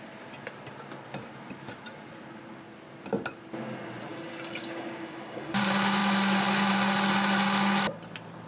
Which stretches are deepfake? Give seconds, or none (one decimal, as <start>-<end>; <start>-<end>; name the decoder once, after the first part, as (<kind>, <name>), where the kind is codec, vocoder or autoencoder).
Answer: 4.1-5.6 (codec, DAC)